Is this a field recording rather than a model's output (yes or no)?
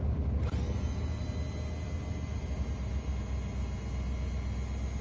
yes